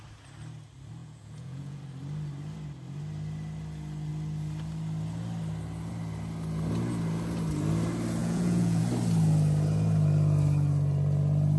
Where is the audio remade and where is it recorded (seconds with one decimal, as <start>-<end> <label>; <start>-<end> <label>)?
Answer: 0.0-1.0 recorded; 1.0-1.8 remade; 1.8-8.2 recorded; 8.2-8.8 remade; 8.8-11.6 recorded